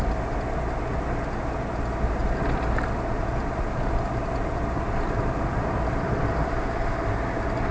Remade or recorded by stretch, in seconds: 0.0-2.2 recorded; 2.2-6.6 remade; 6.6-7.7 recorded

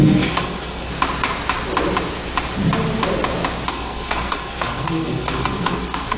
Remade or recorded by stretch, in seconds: 0.0-0.9 remade; 0.9-3.7 recorded; 3.7-6.2 remade

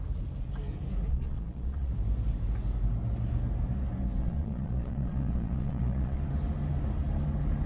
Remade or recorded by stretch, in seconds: 0.0-1.1 recorded; 1.1-1.9 remade; 1.9-4.2 recorded; 4.2-6.2 remade; 6.2-7.7 recorded

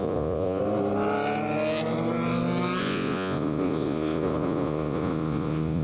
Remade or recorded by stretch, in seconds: 0.0-0.6 remade; 0.6-2.8 recorded; 2.8-5.8 remade

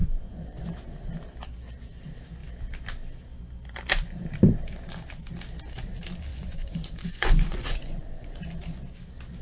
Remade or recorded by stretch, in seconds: 0.0-0.6 remade; 0.6-6.3 recorded; 6.3-8.4 remade; 8.4-9.4 recorded